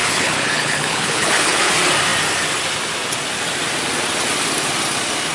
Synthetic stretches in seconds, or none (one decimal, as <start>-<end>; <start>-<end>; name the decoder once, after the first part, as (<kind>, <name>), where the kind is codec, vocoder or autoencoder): 0.0-1.7 (codec, HILCodec)